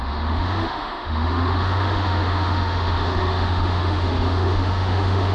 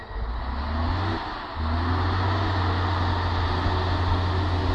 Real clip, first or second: second